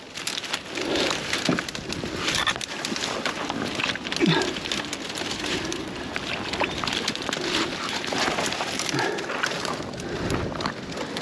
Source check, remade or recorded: recorded